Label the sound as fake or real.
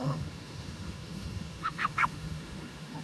fake